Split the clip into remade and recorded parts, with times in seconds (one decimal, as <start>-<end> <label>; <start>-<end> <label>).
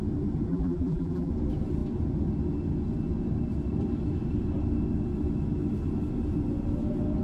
0.0-0.5 recorded; 0.5-1.3 remade; 1.3-7.2 recorded